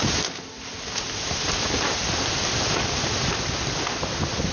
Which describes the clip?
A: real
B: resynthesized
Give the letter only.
A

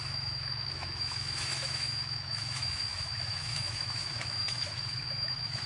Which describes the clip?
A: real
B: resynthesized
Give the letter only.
B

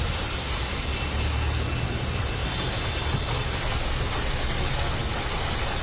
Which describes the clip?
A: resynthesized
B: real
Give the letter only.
B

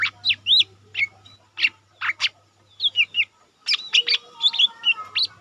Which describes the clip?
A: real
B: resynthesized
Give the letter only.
A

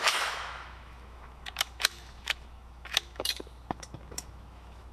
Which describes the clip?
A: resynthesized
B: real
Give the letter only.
A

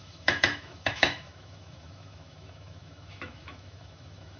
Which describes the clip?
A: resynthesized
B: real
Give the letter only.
A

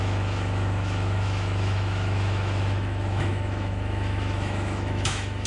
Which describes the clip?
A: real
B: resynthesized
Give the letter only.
B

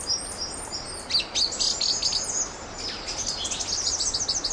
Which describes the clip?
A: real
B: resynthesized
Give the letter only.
A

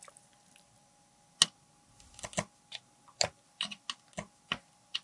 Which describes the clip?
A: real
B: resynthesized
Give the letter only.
A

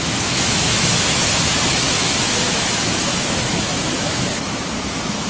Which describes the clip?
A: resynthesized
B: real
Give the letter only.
A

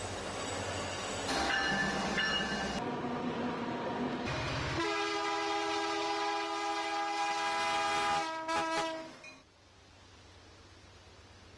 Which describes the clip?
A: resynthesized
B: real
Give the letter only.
B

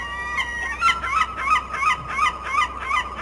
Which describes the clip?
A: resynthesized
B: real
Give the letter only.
B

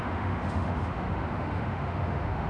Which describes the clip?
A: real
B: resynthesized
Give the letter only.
B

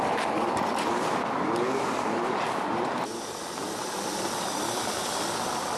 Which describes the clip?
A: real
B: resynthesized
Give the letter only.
A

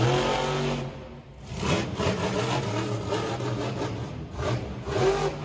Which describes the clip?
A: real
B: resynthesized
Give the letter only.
A